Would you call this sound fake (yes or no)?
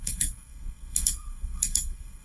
yes